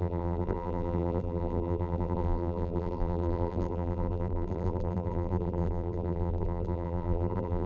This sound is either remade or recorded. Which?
remade